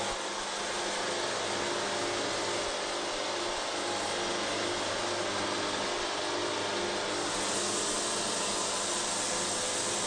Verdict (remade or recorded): recorded